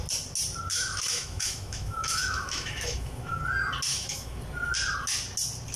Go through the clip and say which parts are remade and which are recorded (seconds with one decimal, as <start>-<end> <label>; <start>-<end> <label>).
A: 0.0-0.7 recorded; 0.7-3.4 remade; 3.4-3.9 recorded; 3.9-4.4 remade; 4.4-5.8 recorded